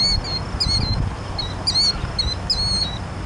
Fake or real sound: real